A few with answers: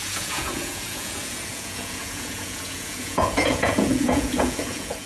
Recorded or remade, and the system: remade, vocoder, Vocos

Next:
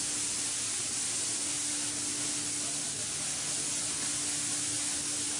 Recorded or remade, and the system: recorded